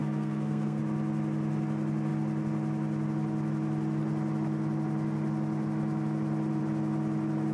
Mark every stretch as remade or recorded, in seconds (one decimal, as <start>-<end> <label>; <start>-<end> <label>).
0.0-0.8 remade; 0.8-7.5 recorded